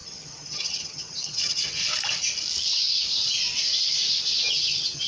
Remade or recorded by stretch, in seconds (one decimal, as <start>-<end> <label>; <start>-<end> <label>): 0.0-1.8 remade; 1.8-4.5 recorded; 4.5-5.1 remade